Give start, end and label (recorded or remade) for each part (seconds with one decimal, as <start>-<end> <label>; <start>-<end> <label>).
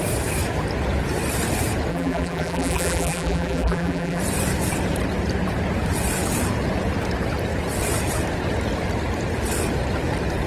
0.0-1.9 recorded; 1.9-4.2 remade; 4.2-10.5 recorded